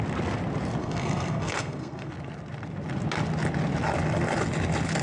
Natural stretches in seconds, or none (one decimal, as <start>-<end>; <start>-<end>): 0.0-0.8; 2.1-5.0